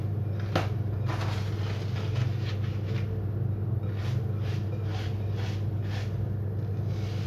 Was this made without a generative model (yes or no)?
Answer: yes